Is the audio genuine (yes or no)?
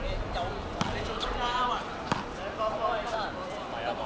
yes